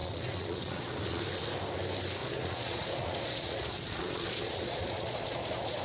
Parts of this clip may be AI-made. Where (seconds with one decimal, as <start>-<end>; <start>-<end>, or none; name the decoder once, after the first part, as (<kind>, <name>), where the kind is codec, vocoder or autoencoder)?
0.0-1.2 (vocoder, Vocos); 2.2-5.8